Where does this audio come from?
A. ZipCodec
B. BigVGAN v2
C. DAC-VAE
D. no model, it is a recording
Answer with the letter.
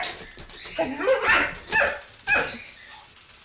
D